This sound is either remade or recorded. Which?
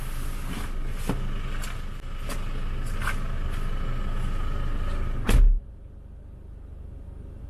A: recorded